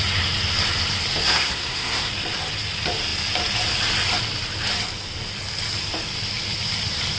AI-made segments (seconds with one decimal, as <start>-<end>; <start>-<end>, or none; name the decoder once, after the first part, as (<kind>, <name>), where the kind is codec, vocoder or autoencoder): 1.2-2.1 (codec, SNAC)